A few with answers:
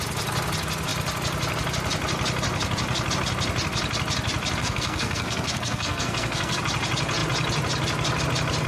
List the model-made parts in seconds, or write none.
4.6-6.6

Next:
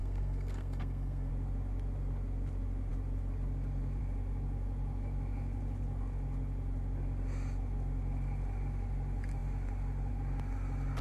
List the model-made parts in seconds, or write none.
0.0-1.3

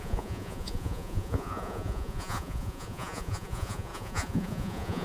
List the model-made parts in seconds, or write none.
0.0-5.0

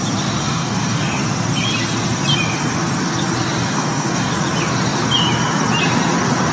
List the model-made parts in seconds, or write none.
0.4-1.2; 3.6-4.3